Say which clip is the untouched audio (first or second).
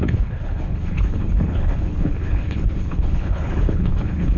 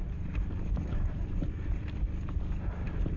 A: second